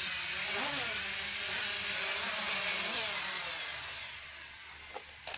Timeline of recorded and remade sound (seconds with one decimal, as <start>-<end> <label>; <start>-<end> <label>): 0.0-5.4 recorded